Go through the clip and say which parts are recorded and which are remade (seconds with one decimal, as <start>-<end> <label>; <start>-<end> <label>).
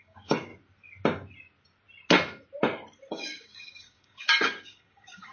0.0-0.5 remade; 0.5-3.1 recorded; 3.1-5.3 remade